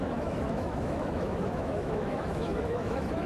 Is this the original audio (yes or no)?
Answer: no